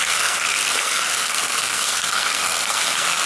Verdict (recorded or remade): remade